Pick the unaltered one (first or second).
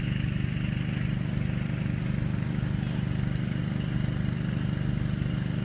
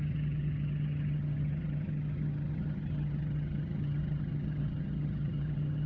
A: first